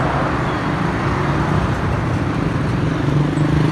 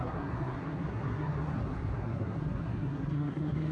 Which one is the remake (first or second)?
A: second